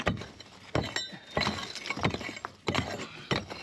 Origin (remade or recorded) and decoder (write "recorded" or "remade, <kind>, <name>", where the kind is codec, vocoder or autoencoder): recorded